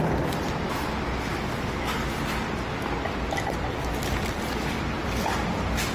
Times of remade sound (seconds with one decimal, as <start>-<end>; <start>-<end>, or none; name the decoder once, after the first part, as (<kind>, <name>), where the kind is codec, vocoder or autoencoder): none